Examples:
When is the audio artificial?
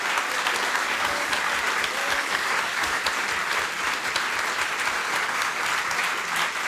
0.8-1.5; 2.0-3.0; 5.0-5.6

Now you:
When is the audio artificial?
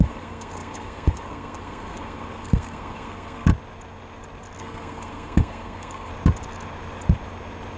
0.0-3.5; 4.6-6.1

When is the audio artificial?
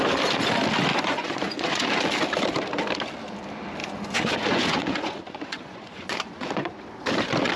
0.9-2.0; 3.8-6.9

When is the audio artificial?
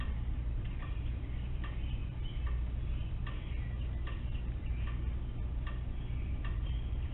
0.0-2.0; 6.3-7.1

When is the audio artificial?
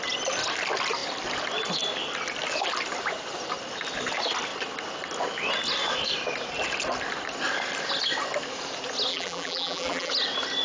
9.1-10.1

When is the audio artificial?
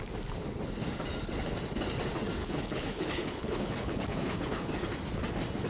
2.4-4.7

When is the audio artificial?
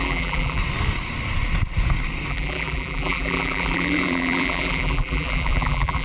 0.0-0.6; 2.3-6.0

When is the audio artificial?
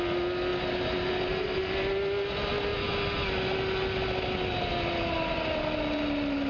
none